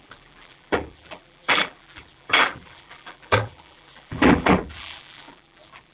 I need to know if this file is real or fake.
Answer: fake